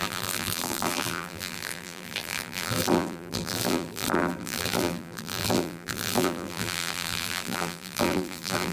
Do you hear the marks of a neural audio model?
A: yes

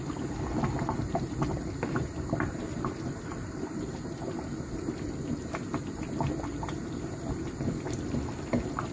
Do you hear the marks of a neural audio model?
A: yes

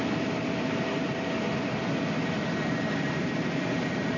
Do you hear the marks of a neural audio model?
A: yes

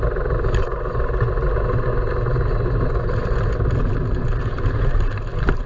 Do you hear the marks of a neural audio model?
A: no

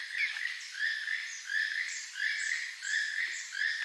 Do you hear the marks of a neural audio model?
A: no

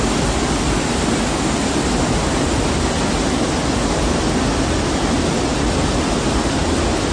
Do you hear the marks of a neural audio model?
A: no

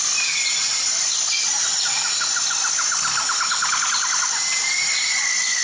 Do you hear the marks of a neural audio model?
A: no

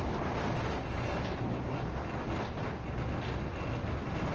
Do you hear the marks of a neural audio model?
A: no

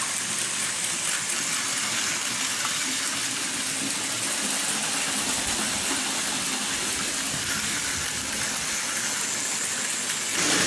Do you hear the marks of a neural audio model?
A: no